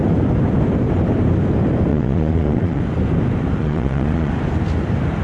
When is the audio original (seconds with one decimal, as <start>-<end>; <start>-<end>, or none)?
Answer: 0.0-1.9; 2.8-3.6; 4.3-5.2